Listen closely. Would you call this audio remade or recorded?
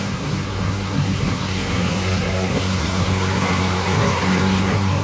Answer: remade